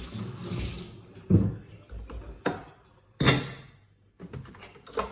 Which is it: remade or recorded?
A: recorded